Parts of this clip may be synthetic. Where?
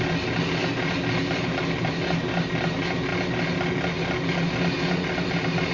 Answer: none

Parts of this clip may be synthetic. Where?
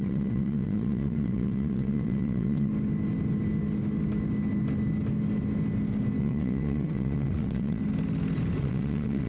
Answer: 0.0-2.7 (vocoder, WaveNeXt); 6.2-7.8; 8.6-9.3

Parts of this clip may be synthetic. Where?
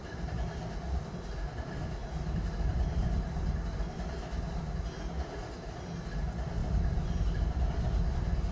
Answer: none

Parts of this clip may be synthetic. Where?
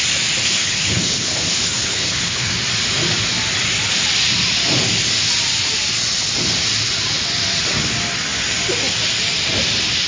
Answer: 0.4-2.5 (codec, HILCodec)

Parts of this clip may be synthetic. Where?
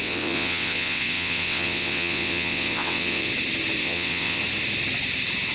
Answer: 0.0-3.3 (vocoder, WaveNeXt); 3.8-4.4